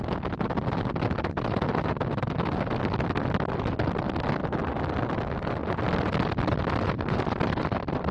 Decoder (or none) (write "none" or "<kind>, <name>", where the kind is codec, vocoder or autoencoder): none